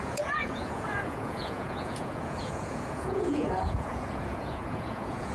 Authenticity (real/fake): fake